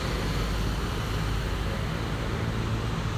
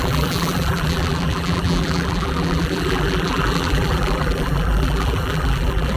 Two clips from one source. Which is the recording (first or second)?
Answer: first